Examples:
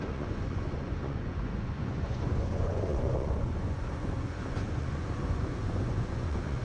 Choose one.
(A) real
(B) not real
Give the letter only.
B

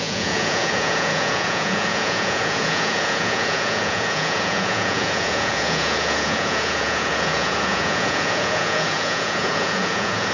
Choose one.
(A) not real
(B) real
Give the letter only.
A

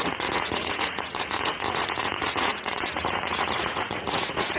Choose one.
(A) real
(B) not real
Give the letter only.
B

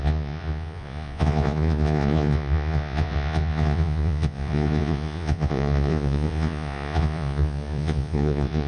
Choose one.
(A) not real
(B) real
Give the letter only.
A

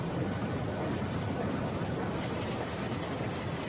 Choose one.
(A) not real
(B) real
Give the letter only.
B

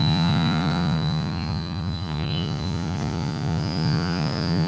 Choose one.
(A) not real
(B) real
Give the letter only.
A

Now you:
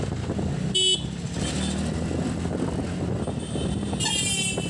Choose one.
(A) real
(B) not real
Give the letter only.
A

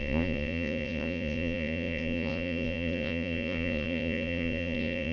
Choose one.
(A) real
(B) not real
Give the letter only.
B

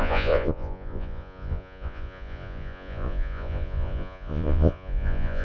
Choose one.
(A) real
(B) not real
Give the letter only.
B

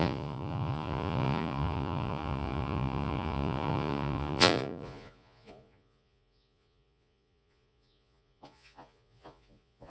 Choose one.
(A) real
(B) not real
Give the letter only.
B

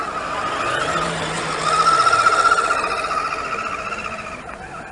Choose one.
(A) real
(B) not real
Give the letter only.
A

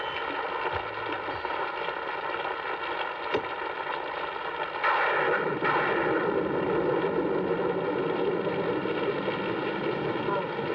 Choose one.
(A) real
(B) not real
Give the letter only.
A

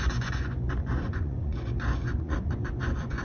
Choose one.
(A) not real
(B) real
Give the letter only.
A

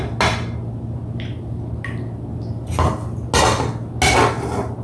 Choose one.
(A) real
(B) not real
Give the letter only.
A